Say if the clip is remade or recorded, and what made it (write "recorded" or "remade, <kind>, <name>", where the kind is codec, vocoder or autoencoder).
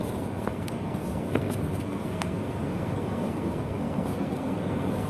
remade, codec, SNAC